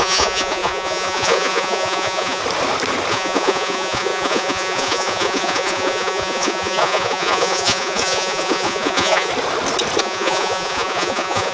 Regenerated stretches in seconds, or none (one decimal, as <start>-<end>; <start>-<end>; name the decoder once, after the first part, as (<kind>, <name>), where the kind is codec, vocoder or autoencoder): 0.0-2.4 (vocoder, Vocos); 3.1-9.3; 10.0-11.5